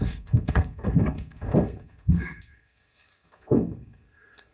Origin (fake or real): fake